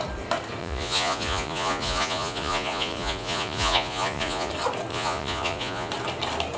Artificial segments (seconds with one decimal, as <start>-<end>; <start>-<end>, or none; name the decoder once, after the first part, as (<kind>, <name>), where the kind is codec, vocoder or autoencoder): 0.6-4.5 (vocoder, Vocos); 4.9-5.9